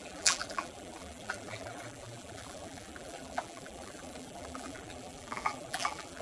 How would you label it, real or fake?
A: fake